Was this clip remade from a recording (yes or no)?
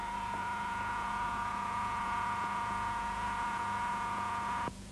yes